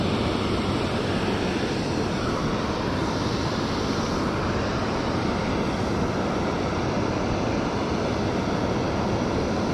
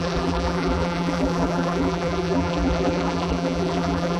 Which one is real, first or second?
first